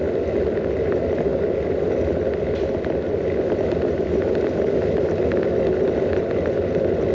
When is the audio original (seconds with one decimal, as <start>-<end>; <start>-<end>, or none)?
0.0-7.1